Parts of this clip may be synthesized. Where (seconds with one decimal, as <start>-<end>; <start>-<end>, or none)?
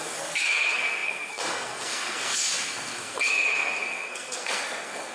0.0-5.1